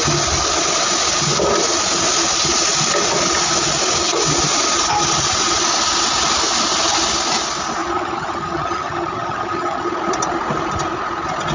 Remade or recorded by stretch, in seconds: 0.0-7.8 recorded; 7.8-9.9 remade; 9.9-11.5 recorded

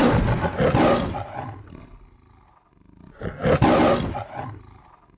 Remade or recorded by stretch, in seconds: 0.0-5.2 recorded

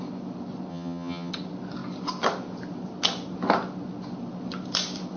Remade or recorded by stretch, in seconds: 0.0-0.7 recorded; 0.7-1.3 remade; 1.3-5.2 recorded

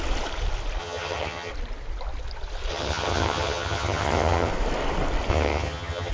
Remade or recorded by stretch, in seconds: 0.0-0.8 recorded; 0.8-1.5 remade; 1.5-2.7 recorded; 2.7-4.5 remade; 4.5-5.3 recorded; 5.3-6.1 remade

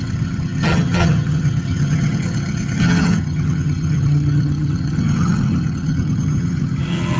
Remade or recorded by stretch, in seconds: 0.0-7.2 remade

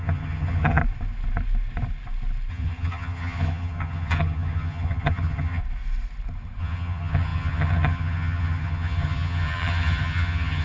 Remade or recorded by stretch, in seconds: 0.0-0.8 remade; 0.8-2.5 recorded; 2.5-5.6 remade; 5.6-6.6 recorded; 6.6-10.6 remade

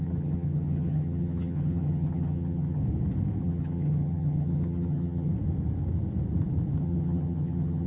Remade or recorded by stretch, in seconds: 0.0-2.8 remade; 2.8-3.4 recorded; 3.4-5.3 remade; 5.3-6.8 recorded; 6.8-7.9 remade